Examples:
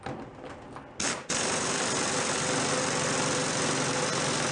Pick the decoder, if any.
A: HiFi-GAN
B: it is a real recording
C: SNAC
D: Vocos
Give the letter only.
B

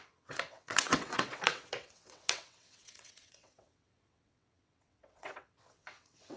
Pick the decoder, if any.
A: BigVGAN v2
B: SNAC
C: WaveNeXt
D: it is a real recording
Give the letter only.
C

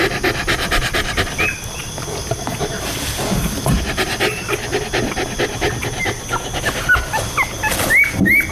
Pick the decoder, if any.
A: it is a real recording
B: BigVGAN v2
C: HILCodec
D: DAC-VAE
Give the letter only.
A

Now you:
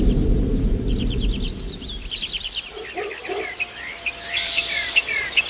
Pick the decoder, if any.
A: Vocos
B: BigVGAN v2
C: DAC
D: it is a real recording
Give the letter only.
B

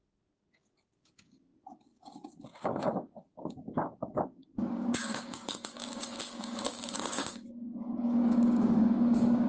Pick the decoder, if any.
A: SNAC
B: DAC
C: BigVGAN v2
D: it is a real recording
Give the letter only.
B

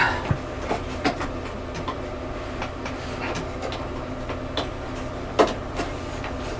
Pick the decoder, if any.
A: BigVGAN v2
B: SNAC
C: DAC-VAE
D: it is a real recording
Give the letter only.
D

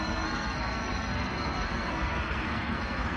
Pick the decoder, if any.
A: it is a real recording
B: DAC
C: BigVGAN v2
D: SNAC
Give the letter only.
D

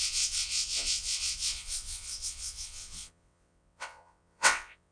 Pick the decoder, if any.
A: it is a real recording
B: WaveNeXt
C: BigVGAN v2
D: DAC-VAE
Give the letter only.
B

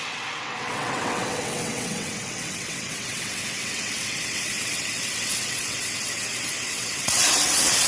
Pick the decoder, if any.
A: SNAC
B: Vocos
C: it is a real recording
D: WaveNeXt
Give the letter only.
D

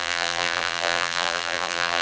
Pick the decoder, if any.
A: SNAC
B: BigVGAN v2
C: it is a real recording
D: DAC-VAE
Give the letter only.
B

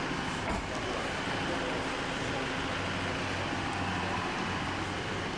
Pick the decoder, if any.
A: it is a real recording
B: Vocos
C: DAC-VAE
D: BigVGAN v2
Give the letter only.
A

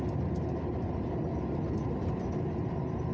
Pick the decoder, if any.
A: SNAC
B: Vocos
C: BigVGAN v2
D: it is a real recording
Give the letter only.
D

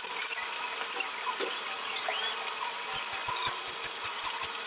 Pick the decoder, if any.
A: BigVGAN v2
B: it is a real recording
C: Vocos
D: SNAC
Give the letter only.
B